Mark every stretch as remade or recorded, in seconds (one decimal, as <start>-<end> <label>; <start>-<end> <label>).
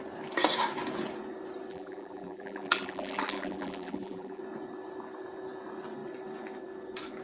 0.0-1.7 recorded; 1.7-4.4 remade; 4.4-7.2 recorded